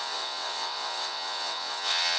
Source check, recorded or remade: remade